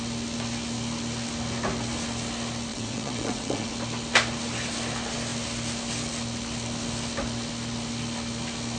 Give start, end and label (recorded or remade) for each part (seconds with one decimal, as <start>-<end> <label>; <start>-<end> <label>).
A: 0.0-2.7 recorded; 2.7-3.7 remade; 3.7-8.8 recorded